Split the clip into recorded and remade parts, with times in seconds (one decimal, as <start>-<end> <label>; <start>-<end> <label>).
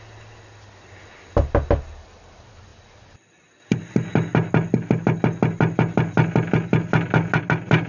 0.0-7.9 recorded